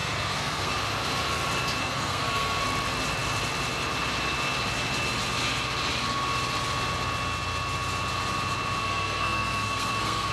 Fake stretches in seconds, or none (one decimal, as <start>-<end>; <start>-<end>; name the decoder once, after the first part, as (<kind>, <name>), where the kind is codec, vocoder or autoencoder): 0.0-0.7 (codec, SNAC); 1.8-2.6; 8.8-10.3